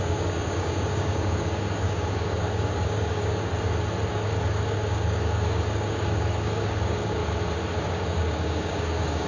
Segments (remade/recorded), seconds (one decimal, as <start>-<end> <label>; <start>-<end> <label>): 0.0-3.5 remade; 3.5-4.1 recorded; 4.1-7.2 remade; 7.2-7.8 recorded; 7.8-9.3 remade